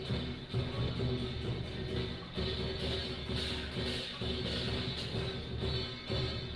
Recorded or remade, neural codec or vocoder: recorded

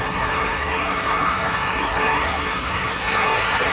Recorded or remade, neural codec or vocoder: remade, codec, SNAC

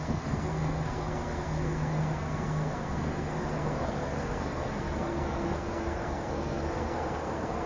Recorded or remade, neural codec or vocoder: remade, codec, SNAC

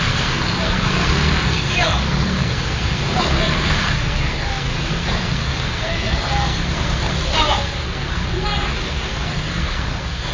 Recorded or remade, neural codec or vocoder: remade, codec, SNAC